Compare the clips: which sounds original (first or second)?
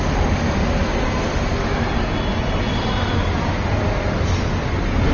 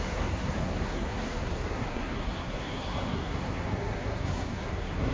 first